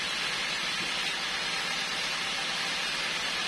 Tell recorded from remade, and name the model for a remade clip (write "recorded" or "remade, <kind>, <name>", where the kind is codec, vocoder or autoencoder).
recorded